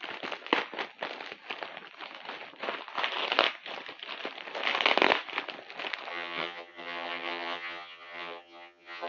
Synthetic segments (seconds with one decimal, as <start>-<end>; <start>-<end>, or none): 6.1-9.1